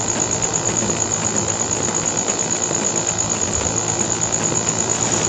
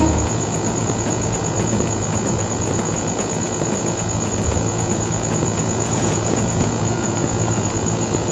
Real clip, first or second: first